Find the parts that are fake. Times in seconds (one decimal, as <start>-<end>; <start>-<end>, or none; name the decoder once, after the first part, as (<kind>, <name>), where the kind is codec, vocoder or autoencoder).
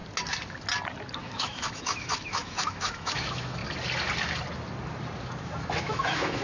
1.2-3.6 (autoencoder, DAC-VAE); 5.8-6.4